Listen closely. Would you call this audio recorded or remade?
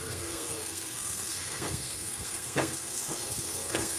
remade